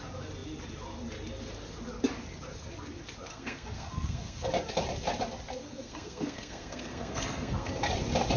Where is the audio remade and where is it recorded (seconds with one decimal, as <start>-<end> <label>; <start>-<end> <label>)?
0.0-3.3 recorded; 3.3-4.5 remade; 4.5-5.6 recorded; 5.6-7.7 remade; 7.7-8.4 recorded